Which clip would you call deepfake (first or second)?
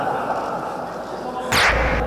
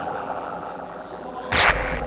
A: second